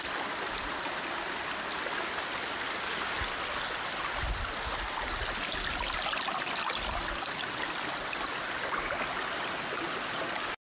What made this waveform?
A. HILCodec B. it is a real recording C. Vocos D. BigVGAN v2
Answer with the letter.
B